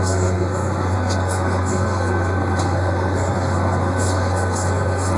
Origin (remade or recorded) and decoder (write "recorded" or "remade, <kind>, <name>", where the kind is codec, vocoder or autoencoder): remade, codec, SNAC